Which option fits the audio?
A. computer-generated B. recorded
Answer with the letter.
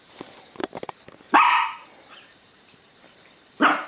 A